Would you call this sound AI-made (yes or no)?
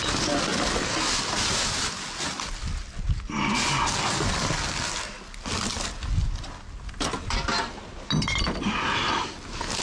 no